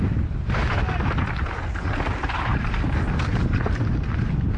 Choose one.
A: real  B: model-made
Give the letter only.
A